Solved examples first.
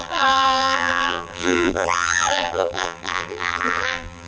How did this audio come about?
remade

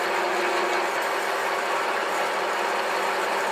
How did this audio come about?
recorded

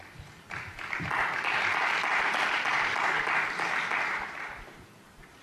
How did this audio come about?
recorded